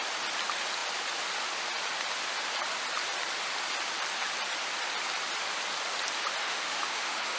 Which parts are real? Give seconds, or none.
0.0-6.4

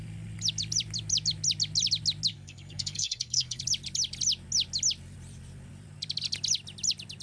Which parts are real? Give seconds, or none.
0.0-2.3; 3.6-7.2